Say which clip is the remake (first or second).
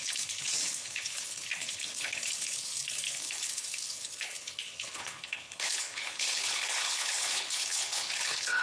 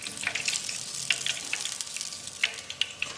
first